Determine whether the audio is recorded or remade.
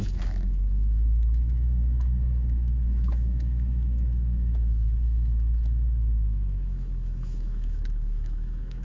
remade